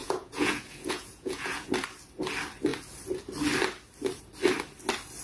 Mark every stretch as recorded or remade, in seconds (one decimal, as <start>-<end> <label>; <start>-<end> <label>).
0.0-1.7 remade; 1.7-5.2 recorded